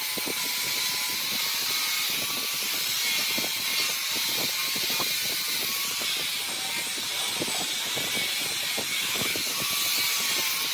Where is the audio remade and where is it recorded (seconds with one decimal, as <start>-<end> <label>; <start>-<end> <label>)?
0.0-8.9 recorded; 8.9-9.7 remade; 9.7-10.7 recorded